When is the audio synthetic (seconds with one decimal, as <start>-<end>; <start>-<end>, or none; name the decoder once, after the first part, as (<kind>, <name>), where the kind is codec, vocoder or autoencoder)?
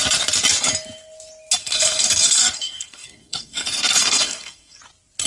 1.6-4.8 (codec, SNAC)